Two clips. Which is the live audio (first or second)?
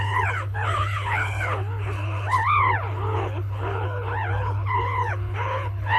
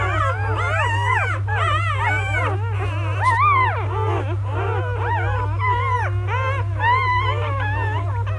second